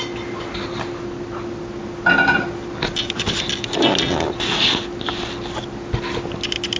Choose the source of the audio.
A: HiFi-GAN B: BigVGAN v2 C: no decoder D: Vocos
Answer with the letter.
C